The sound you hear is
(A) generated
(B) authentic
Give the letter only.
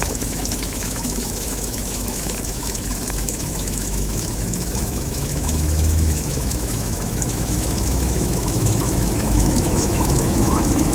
A